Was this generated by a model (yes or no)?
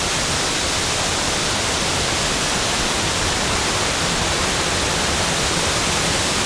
yes